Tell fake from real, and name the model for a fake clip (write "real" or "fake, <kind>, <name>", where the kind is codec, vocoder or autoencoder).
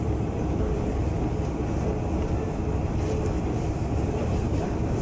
fake, vocoder, BigVGAN v2